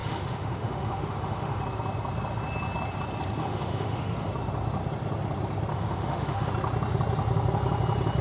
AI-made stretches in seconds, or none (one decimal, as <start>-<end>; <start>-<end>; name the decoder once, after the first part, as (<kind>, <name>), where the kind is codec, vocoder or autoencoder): 0.0-1.6 (autoencoder, DAC-VAE); 3.4-4.3; 5.7-6.5